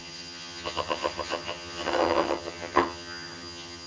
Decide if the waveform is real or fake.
fake